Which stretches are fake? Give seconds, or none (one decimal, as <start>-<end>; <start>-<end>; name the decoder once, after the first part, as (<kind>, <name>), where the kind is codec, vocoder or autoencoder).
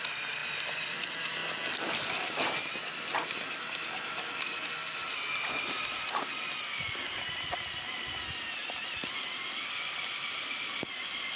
8.6-10.4 (vocoder, BigVGAN v2)